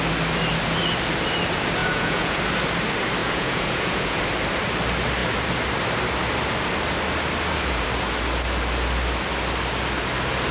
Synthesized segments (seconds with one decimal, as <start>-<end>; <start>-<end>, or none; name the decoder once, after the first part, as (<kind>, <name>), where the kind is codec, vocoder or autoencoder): 1.8-2.4 (vocoder, Vocos); 3.2-4.2